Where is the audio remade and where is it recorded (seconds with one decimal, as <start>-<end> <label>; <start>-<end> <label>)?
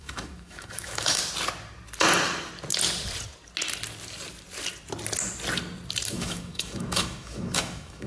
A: 0.0-1.2 remade; 1.2-6.1 recorded; 6.1-8.1 remade